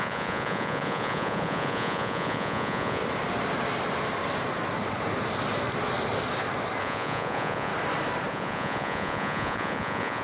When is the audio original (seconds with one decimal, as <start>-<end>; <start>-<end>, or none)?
3.0-6.8; 7.7-8.3